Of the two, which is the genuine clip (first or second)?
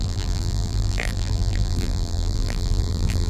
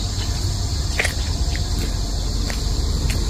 second